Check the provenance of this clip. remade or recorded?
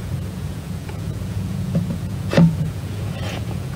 remade